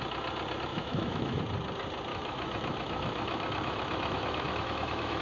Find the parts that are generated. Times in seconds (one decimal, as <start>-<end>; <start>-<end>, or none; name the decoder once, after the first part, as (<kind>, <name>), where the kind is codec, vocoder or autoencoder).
0.7-1.4 (autoencoder, DAC-VAE); 2.1-5.2